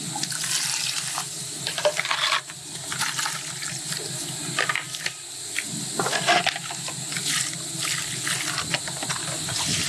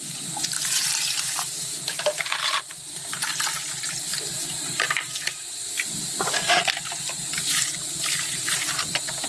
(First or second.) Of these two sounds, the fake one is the second